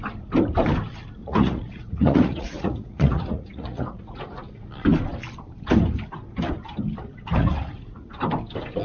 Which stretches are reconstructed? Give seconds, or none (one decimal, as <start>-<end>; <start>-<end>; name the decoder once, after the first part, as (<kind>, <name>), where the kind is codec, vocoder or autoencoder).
1.2-4.2 (vocoder, Vocos); 7.4-8.1